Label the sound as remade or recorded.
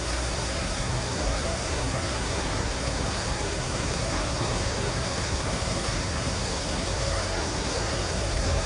remade